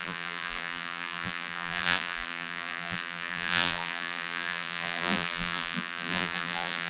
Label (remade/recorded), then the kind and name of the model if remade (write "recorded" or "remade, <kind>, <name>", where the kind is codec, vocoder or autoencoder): remade, vocoder, BigVGAN v2